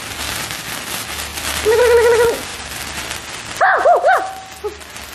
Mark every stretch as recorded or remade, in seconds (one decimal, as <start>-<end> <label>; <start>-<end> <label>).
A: 0.0-1.3 recorded; 1.3-1.8 remade; 1.8-5.1 recorded